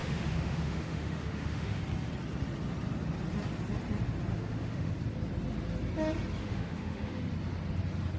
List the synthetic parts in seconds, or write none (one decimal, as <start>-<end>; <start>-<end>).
0.0-1.8; 4.3-4.9; 6.4-7.2